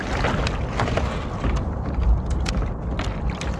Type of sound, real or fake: real